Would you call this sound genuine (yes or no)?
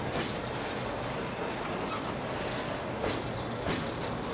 yes